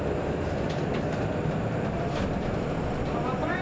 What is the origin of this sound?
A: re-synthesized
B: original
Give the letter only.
B